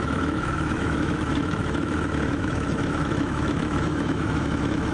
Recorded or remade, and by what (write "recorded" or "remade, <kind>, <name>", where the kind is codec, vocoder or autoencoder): remade, autoencoder, DAC-VAE